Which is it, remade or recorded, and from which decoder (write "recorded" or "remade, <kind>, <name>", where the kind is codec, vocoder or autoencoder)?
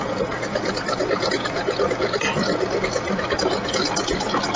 recorded